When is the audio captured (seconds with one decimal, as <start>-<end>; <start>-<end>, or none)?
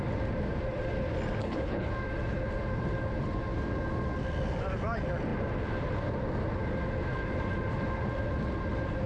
0.0-1.4; 1.9-9.1